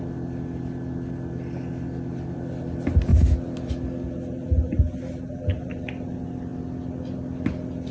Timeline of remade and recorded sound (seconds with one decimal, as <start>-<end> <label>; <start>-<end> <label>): 0.0-7.9 recorded